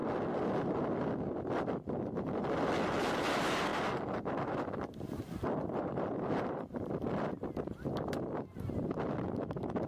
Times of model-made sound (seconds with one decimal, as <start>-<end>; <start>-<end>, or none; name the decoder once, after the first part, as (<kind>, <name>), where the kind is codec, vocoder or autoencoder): 3.7-4.2 (vocoder, BigVGAN v2)